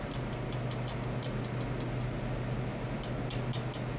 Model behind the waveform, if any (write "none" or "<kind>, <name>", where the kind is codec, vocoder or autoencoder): none